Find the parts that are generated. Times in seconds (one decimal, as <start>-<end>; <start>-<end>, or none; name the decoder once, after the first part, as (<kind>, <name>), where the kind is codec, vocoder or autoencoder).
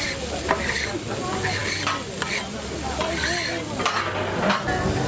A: none